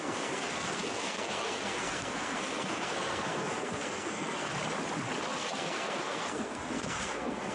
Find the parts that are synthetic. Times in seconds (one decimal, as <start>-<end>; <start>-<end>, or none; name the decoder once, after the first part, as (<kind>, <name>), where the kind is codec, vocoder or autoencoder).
0.0-4.5 (codec, SNAC); 5.3-7.5